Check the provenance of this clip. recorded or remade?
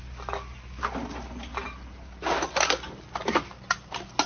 recorded